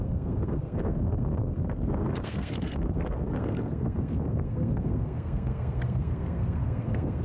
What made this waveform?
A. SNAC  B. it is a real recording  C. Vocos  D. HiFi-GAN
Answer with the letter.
A